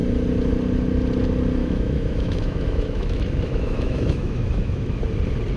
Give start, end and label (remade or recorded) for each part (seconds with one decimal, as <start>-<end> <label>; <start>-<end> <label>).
0.0-1.6 recorded; 1.6-5.0 remade; 5.0-5.6 recorded